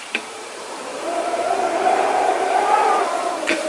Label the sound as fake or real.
fake